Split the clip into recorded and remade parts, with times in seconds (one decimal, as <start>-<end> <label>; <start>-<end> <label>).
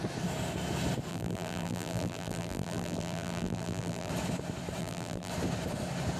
0.0-1.1 recorded; 1.1-4.1 remade; 4.1-4.8 recorded; 4.8-5.3 remade; 5.3-6.2 recorded